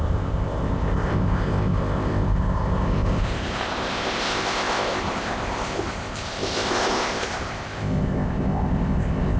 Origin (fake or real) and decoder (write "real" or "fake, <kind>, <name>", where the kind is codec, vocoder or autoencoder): fake, codec, ZipCodec